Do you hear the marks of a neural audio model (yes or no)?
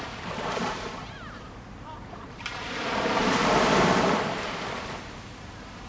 yes